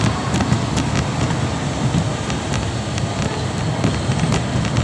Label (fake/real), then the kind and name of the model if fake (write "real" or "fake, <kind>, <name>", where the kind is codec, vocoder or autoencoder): real